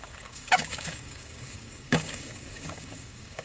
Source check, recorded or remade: remade